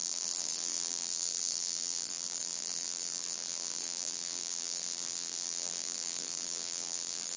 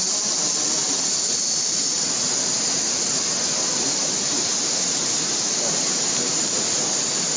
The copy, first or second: first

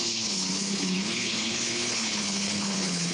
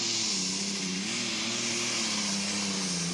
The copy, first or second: first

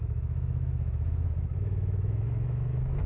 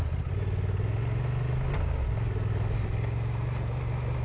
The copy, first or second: first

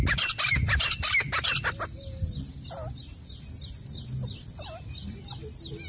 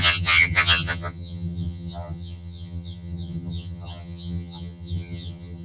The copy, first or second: second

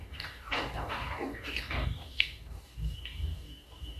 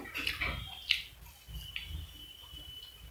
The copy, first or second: first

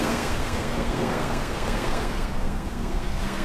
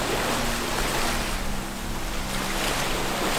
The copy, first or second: first